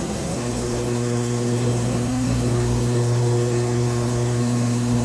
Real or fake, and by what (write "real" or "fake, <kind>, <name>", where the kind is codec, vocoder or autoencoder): fake, codec, SNAC